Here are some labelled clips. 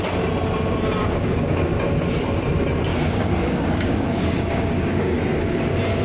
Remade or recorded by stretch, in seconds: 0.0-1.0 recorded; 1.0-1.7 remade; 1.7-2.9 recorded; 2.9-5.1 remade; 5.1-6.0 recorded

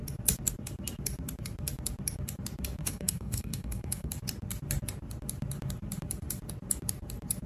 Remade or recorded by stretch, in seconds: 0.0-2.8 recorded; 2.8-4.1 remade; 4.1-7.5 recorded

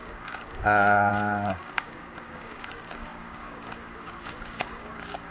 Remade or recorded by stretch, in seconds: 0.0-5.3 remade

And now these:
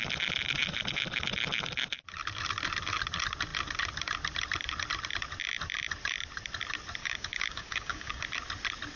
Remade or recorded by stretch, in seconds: 0.0-7.0 recorded; 7.0-8.2 remade; 8.2-9.0 recorded